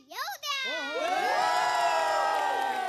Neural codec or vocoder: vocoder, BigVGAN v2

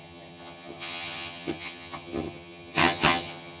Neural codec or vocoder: vocoder, HiFi-GAN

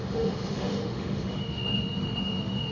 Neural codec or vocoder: autoencoder, DAC-VAE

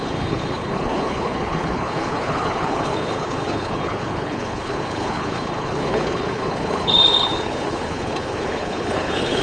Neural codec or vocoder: codec, HILCodec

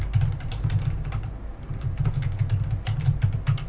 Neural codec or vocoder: none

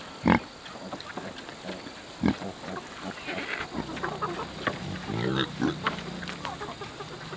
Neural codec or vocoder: none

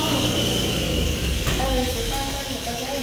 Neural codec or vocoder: codec, DAC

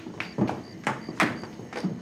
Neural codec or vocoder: none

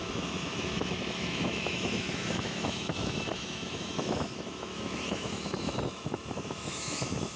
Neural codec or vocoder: autoencoder, DAC-VAE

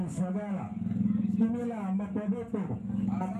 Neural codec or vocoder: codec, DAC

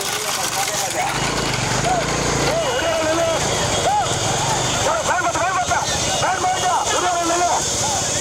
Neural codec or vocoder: none